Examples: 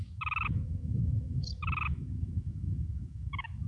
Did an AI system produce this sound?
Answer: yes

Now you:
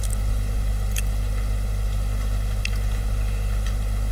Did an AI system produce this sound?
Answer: no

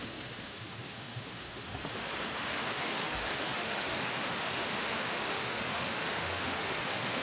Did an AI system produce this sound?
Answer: yes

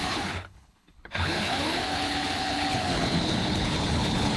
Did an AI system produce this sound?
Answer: yes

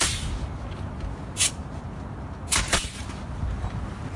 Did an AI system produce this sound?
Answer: no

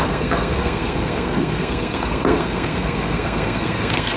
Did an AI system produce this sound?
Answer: yes